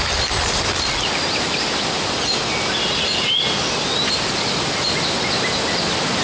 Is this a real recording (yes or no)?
yes